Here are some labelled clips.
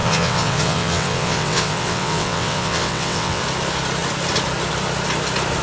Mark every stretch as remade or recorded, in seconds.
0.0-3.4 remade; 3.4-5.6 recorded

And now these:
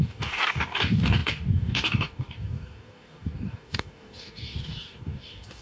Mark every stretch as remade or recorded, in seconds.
0.0-5.6 remade

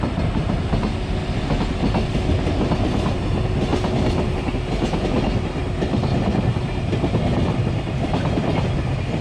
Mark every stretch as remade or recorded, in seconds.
0.0-9.2 recorded

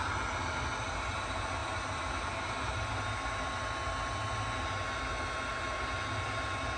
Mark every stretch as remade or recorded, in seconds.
0.0-6.8 recorded

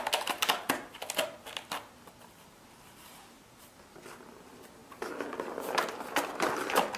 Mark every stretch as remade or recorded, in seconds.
0.0-7.0 recorded

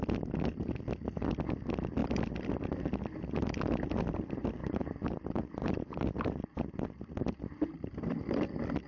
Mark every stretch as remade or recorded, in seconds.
0.0-4.6 recorded; 4.6-6.9 remade; 6.9-8.9 recorded